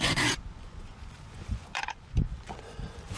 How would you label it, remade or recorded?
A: remade